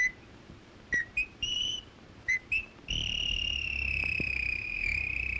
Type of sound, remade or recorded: remade